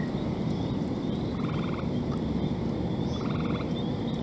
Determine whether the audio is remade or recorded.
recorded